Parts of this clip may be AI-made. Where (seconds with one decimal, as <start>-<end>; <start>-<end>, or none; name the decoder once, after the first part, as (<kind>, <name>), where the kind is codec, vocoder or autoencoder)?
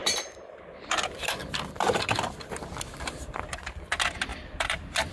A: 0.0-2.7 (vocoder, BigVGAN v2); 4.3-5.1